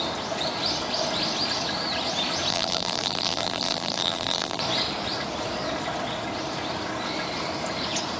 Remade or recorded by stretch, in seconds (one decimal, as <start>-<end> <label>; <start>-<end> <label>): 0.0-2.5 recorded; 2.5-4.6 remade; 4.6-8.2 recorded